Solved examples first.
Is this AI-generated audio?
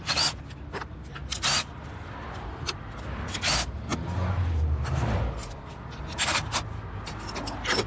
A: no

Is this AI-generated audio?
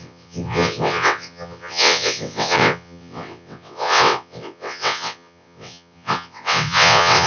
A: yes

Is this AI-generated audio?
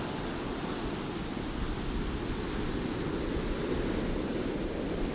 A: no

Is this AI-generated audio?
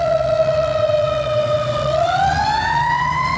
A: yes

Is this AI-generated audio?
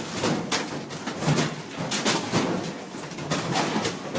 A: no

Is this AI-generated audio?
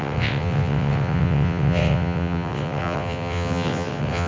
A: yes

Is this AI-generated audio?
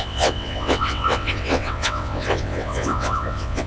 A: yes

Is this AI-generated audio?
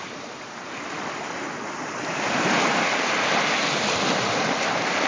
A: no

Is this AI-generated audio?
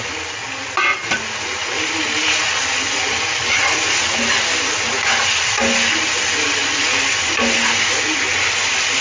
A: no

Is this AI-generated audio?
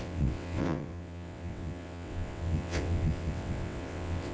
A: yes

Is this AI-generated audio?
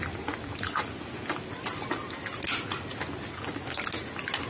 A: no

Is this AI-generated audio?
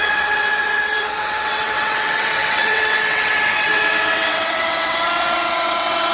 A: yes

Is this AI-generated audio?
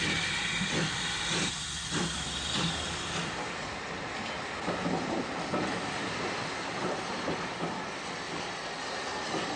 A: no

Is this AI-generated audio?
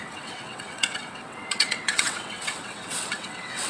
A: yes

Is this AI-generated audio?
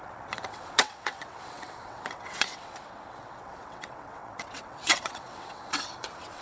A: yes